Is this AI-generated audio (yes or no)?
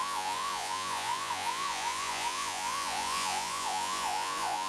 yes